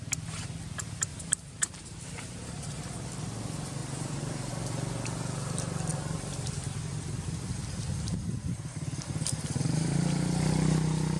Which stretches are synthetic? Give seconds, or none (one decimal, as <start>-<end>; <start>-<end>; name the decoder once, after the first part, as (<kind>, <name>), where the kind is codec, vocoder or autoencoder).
1.1-2.8 (vocoder, BigVGAN v2); 3.8-4.5